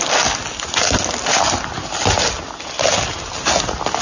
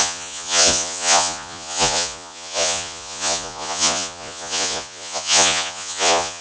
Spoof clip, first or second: second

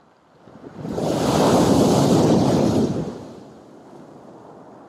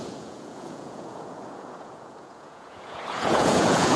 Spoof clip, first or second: second